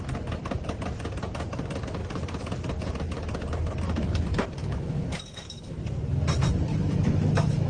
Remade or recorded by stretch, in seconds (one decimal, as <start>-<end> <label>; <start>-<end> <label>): 0.0-4.6 recorded; 4.6-5.8 remade; 5.8-6.7 recorded; 6.7-7.7 remade